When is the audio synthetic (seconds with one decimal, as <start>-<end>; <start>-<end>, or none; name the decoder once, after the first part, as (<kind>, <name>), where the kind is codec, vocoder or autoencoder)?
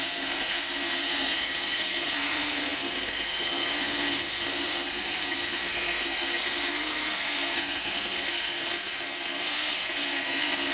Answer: 0.0-10.7 (codec, SNAC)